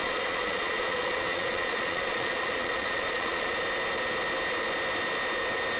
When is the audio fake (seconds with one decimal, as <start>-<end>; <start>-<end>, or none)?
0.0-3.5